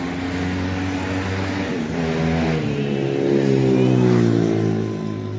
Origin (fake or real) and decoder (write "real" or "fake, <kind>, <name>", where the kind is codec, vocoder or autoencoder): real